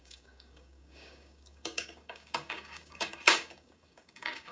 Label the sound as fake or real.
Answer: fake